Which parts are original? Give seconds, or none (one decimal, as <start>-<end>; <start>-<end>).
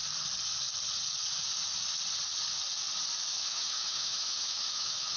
0.0-3.3